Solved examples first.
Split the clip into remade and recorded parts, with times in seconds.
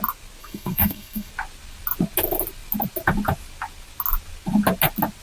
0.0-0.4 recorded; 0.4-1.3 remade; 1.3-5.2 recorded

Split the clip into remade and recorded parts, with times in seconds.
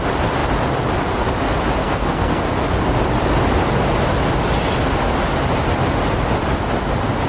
0.0-1.8 recorded; 1.8-2.4 remade; 2.4-7.3 recorded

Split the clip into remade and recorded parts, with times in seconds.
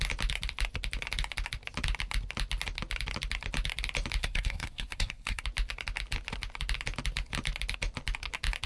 0.0-4.2 recorded; 4.2-5.4 remade; 5.4-8.7 recorded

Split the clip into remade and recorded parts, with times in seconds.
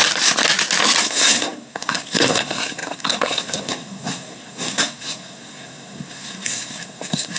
0.0-1.0 recorded; 1.0-7.4 remade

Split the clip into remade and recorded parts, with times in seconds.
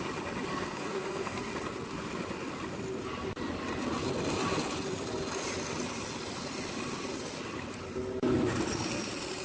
0.0-0.5 recorded; 0.5-1.5 remade; 1.5-9.4 recorded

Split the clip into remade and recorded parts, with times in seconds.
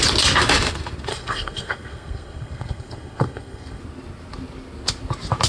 0.0-1.1 recorded; 1.1-3.8 remade; 3.8-5.5 recorded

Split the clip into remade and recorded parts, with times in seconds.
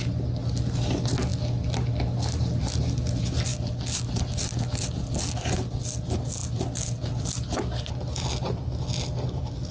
0.0-9.7 recorded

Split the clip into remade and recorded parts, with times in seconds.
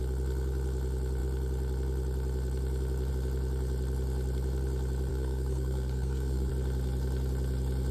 0.0-5.1 recorded; 5.1-6.5 remade; 6.5-7.9 recorded